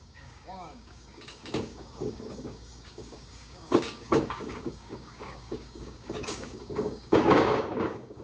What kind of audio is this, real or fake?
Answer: fake